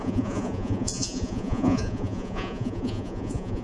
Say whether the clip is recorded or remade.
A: remade